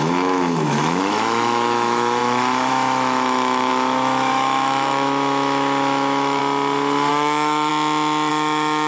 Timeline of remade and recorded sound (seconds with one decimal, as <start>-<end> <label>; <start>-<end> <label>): 0.0-6.4 remade; 6.4-7.1 recorded; 7.1-7.7 remade; 7.7-8.3 recorded; 8.3-8.9 remade